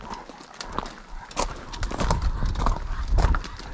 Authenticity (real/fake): real